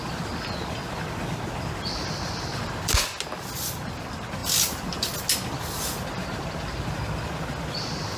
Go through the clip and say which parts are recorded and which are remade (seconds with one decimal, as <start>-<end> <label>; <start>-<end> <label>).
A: 0.0-8.2 recorded